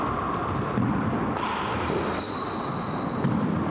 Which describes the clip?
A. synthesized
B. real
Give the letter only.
B